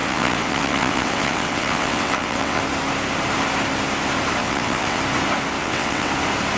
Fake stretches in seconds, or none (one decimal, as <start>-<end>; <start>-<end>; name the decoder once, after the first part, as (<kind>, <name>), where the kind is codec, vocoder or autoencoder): 0.0-2.6 (vocoder, WaveNeXt); 4.4-5.0; 5.6-6.1